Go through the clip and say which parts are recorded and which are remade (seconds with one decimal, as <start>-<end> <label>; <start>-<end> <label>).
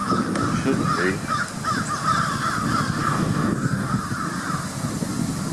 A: 0.0-3.0 recorded; 3.0-4.0 remade; 4.0-5.5 recorded